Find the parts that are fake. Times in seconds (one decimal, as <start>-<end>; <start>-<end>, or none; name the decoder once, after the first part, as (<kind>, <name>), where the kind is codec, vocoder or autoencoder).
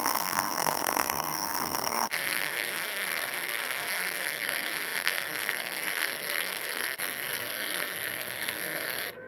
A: 0.0-9.3 (codec, SNAC)